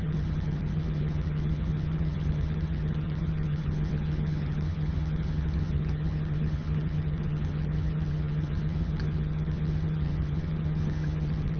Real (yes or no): no